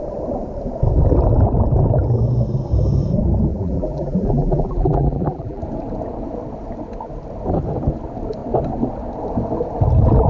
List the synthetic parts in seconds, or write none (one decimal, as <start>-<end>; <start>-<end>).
3.5-5.6